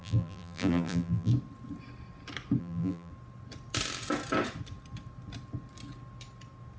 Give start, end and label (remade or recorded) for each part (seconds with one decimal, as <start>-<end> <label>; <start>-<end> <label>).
0.0-1.3 remade; 1.3-2.6 recorded; 2.6-3.1 remade; 3.1-6.8 recorded